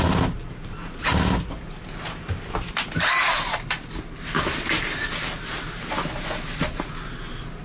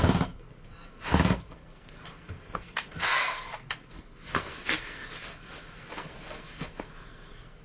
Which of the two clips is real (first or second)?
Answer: first